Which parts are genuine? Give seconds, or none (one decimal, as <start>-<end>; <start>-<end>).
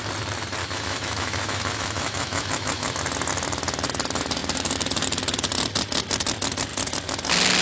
0.0-0.6; 2.9-7.6